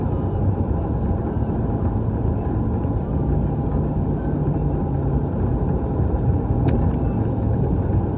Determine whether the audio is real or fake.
real